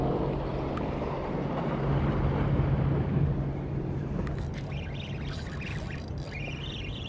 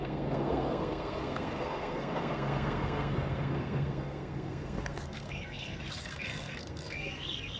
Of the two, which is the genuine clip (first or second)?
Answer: first